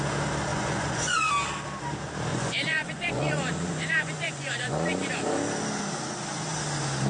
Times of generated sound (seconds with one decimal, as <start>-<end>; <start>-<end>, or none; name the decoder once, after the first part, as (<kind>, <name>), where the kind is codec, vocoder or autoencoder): 0.5-1.3 (vocoder, Vocos); 2.3-5.3